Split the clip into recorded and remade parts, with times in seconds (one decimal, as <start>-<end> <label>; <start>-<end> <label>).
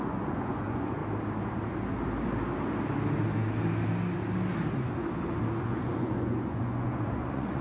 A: 0.0-1.0 remade; 1.0-5.6 recorded; 5.6-7.6 remade